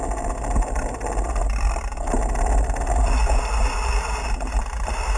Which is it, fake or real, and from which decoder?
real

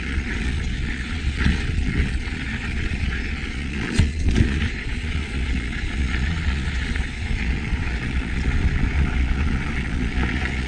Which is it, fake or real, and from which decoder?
fake, vocoder, Vocos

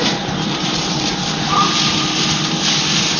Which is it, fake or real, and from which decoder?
real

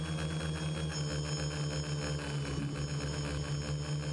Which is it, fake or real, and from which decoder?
real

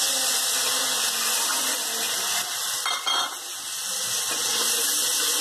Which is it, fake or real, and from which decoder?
real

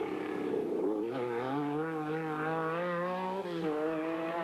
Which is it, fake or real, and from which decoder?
fake, codec, DAC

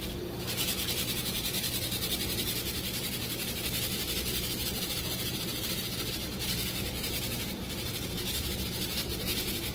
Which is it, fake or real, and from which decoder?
fake, vocoder, BigVGAN v2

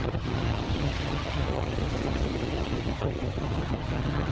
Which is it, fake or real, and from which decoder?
fake, vocoder, HiFi-GAN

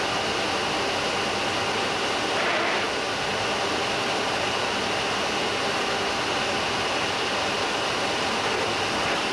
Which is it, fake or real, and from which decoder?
real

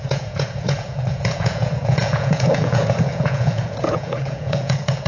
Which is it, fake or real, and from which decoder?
fake, vocoder, Vocos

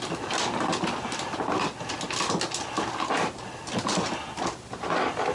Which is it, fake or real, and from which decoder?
real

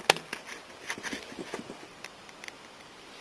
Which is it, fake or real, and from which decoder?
real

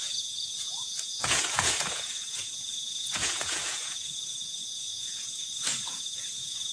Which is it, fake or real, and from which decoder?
fake, vocoder, Vocos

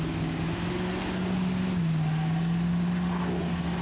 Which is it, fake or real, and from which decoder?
real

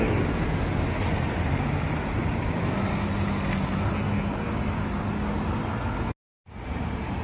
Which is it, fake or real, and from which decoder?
real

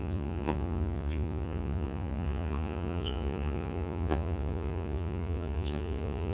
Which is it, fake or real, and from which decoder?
fake, vocoder, Vocos